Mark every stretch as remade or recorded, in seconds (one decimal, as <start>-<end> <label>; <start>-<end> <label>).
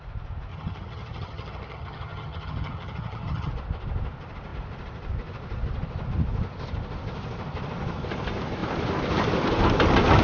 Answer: 0.0-0.5 recorded; 0.5-3.5 remade; 3.5-10.2 recorded